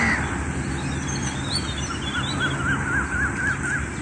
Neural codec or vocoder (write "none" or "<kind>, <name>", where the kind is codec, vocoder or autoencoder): none